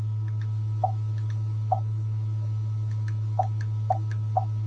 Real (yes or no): no